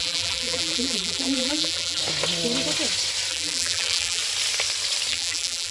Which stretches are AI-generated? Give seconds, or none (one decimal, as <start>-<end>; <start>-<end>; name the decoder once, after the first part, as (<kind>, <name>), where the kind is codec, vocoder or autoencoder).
0.0-2.0 (vocoder, BigVGAN v2); 3.3-4.2; 5.1-5.7

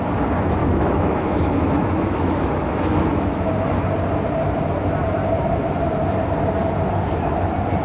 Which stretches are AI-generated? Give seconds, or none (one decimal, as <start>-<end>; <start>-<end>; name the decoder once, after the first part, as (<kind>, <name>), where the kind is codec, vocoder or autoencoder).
0.6-3.5 (autoencoder, DAC-VAE)

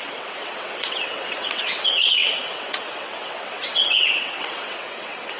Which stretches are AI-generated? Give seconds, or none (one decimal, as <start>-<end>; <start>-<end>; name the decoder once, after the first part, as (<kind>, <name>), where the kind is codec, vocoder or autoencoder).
0.0-5.4 (vocoder, WaveNeXt)